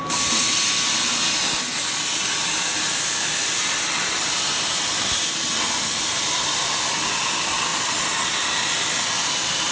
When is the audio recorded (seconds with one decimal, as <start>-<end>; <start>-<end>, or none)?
0.0-9.7